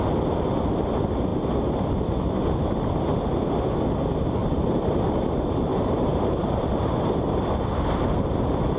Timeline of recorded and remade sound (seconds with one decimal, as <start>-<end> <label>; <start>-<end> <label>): 0.0-4.4 recorded; 4.4-5.0 remade; 5.0-5.7 recorded; 5.7-7.9 remade; 7.9-8.8 recorded